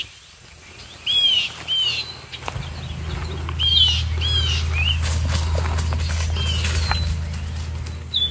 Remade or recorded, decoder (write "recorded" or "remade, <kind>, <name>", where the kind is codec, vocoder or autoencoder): recorded